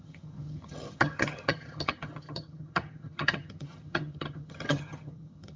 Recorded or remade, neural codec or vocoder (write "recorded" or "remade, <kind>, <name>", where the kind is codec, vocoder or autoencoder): remade, vocoder, HiFi-GAN